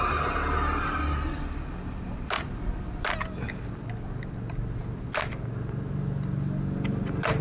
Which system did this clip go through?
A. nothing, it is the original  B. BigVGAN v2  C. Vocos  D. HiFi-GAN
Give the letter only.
A